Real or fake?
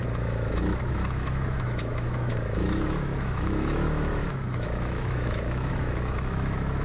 fake